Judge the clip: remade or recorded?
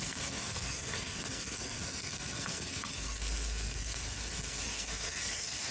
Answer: remade